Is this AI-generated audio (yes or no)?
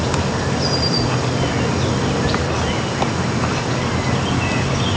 no